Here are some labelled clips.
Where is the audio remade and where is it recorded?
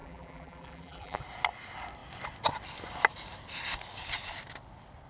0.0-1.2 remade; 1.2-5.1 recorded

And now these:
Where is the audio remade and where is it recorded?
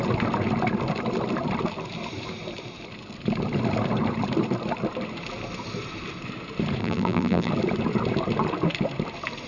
0.0-6.8 recorded; 6.8-7.5 remade; 7.5-9.5 recorded